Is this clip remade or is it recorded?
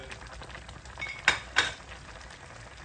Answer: recorded